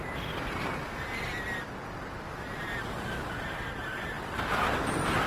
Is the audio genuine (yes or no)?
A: yes